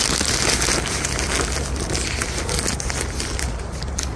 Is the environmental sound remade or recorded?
recorded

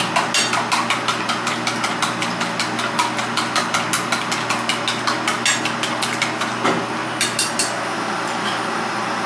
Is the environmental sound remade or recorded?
recorded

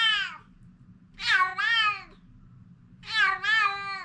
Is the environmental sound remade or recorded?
recorded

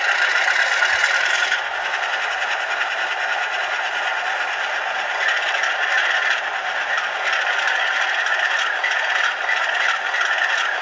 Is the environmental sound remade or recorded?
recorded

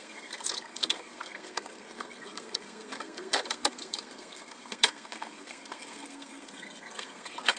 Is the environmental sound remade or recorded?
remade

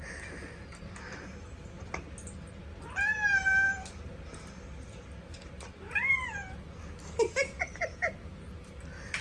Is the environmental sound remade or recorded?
recorded